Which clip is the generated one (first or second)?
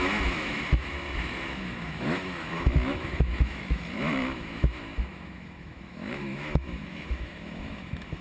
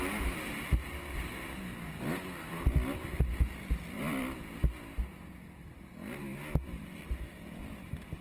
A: first